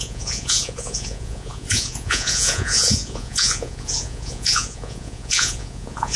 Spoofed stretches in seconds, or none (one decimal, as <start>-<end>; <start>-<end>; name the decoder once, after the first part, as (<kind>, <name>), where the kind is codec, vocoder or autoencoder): 0.0-6.2 (vocoder, Vocos)